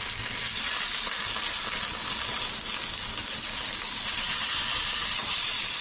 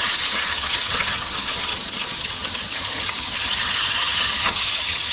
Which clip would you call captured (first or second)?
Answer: first